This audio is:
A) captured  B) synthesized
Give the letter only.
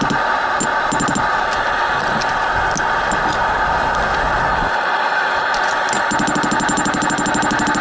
A